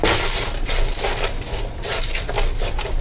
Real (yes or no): yes